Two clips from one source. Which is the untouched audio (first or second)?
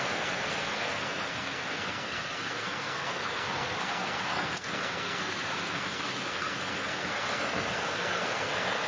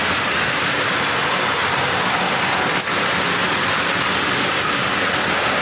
second